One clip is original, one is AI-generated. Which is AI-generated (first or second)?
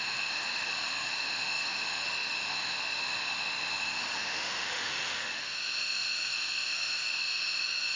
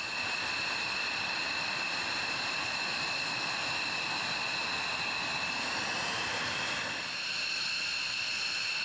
first